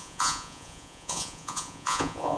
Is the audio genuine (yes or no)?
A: no